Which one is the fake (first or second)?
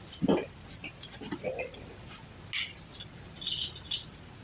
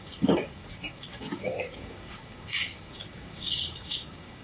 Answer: second